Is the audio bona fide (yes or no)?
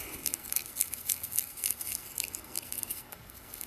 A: no